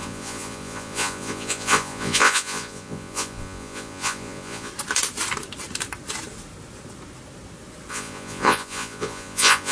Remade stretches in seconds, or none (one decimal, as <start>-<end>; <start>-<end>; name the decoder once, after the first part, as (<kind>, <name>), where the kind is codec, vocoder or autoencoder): 0.0-4.7 (vocoder, Vocos); 7.9-9.7